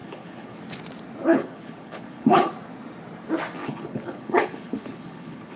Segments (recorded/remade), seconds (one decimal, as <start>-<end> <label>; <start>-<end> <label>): 0.0-0.6 remade; 0.6-1.3 recorded; 1.3-2.5 remade; 2.5-3.6 recorded; 3.6-5.6 remade